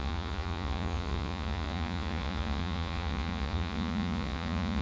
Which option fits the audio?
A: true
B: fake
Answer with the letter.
B